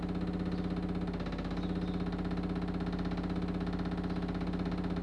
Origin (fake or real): real